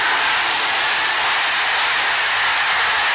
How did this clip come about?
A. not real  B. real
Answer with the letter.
B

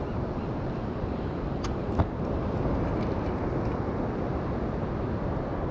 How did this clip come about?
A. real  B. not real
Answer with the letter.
A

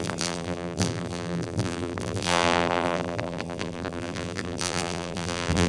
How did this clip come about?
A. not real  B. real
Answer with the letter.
A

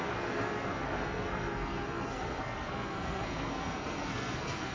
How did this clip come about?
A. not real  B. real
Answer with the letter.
A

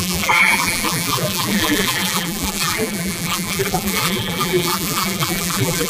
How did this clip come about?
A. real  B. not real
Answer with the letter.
B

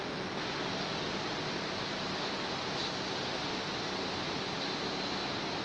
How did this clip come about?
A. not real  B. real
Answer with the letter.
B